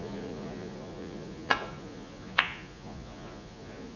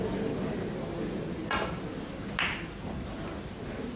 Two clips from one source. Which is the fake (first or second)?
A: first